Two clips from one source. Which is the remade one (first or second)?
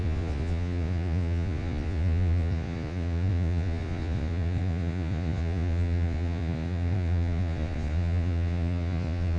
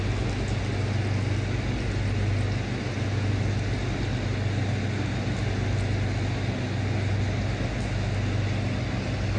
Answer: first